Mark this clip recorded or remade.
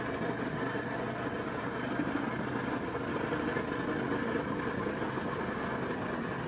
recorded